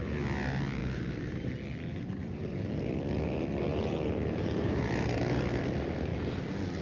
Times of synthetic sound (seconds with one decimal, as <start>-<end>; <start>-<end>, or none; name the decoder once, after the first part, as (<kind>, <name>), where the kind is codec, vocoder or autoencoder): 0.8-1.5 (vocoder, BigVGAN v2); 1.9-2.8; 3.7-4.8